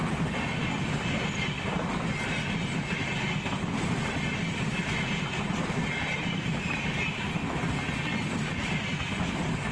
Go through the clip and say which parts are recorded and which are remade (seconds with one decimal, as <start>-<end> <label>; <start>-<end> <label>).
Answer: 0.0-0.9 remade; 0.9-9.7 recorded